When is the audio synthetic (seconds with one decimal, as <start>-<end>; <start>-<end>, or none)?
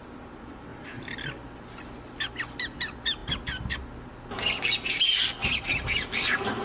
0.7-1.3; 5.4-6.6